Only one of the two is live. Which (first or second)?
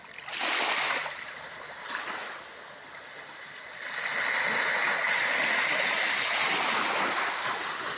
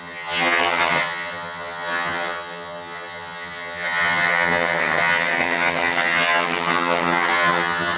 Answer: first